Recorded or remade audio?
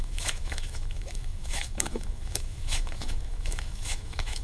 remade